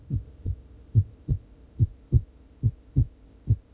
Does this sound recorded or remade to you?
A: remade